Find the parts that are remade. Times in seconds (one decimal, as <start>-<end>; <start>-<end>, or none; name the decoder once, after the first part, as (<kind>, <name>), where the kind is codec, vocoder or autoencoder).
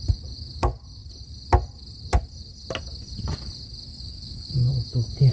3.9-4.7 (codec, DAC)